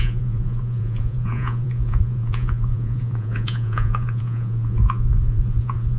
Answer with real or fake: fake